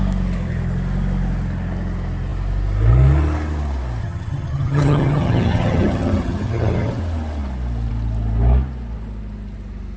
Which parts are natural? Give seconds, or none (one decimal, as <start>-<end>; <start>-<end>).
0.0-4.0; 7.0-10.0